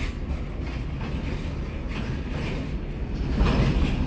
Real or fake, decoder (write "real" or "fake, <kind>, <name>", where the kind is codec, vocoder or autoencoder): real